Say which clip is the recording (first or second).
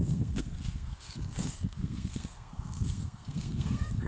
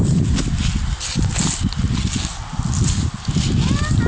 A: second